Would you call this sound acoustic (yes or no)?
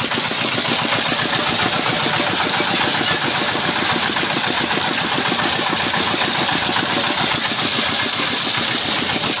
yes